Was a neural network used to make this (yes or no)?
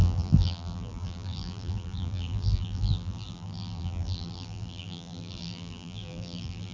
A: yes